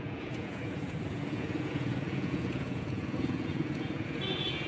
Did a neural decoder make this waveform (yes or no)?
yes